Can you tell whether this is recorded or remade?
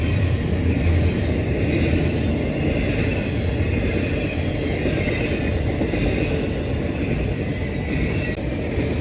recorded